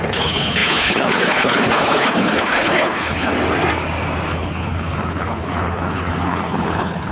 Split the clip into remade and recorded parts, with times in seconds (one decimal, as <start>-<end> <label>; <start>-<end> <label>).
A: 0.0-3.3 remade; 3.3-4.3 recorded; 4.3-7.1 remade